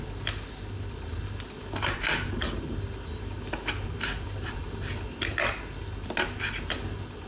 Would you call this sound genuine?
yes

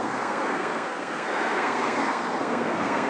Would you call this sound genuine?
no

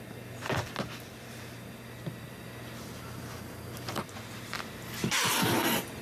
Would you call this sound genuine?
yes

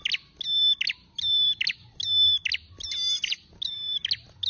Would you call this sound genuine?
yes